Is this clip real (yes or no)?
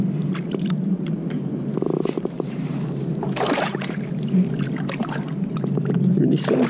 no